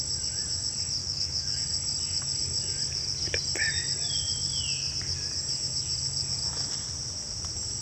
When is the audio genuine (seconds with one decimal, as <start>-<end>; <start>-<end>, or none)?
0.0-1.0; 1.6-7.8